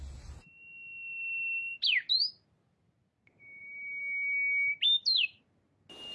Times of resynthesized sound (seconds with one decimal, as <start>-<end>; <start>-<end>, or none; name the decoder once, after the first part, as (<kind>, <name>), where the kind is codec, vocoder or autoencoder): none